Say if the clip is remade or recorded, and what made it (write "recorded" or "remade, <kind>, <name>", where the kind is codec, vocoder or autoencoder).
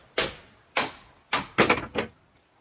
recorded